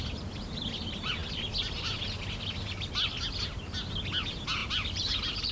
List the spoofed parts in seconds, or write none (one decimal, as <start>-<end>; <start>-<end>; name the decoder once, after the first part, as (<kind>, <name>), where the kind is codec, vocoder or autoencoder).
1.2-2.0 (vocoder, BigVGAN v2); 4.6-5.5